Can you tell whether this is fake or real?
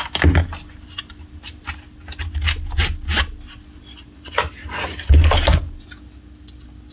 real